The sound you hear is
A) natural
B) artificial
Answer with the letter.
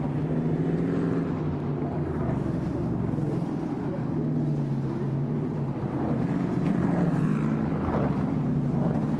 A